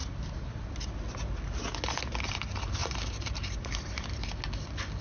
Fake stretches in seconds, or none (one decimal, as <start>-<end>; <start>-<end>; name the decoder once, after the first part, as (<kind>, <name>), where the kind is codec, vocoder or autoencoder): 2.8-4.2 (vocoder, BigVGAN v2)

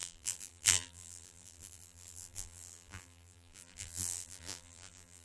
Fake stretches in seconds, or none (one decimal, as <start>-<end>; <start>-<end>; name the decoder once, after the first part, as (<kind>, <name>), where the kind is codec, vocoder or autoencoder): 0.0-5.2 (vocoder, BigVGAN v2)

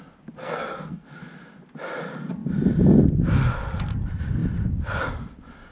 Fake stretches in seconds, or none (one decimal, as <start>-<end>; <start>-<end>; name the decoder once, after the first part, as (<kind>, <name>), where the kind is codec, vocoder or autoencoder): 0.4-1.2 (codec, SNAC)

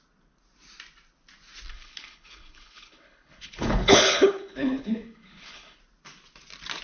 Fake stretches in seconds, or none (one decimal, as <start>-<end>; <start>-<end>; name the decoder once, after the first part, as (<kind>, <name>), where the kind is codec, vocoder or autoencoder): 1.7-5.8 (codec, HILCodec)

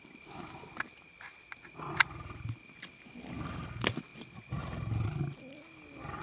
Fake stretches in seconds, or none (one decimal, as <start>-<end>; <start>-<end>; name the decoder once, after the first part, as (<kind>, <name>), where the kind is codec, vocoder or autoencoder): none

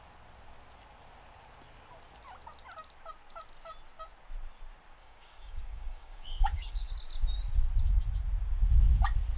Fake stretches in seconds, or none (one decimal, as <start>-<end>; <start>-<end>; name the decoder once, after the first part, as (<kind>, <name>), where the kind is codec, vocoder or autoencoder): 5.0-6.9 (codec, DAC)

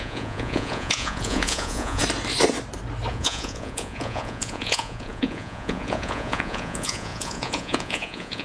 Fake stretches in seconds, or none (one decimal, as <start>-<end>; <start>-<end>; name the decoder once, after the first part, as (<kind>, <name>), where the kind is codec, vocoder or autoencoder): 0.0-2.0 (vocoder, Vocos); 3.1-8.4